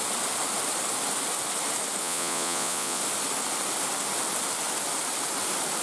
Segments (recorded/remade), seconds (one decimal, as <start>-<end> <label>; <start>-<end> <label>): 0.0-2.0 recorded; 2.0-3.0 remade; 3.0-5.8 recorded